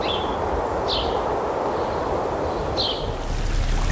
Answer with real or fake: real